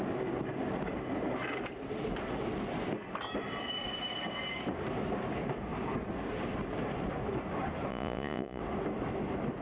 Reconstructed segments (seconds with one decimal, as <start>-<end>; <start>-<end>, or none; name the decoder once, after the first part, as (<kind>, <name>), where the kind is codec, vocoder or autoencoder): 7.9-8.6 (vocoder, Vocos)